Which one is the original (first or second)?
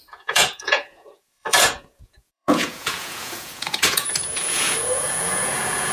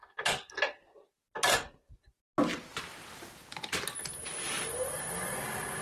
second